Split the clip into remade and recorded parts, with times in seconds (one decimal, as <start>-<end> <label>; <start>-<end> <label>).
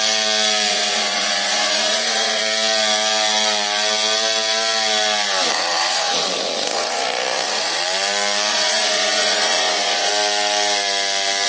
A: 0.0-0.7 recorded; 0.7-2.4 remade; 2.4-5.5 recorded; 5.5-7.8 remade; 7.8-8.5 recorded; 8.5-10.1 remade; 10.1-11.5 recorded